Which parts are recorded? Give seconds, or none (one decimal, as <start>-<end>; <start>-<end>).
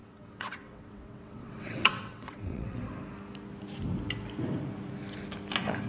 2.8-5.9